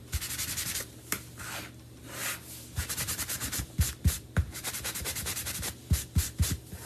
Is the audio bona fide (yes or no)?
no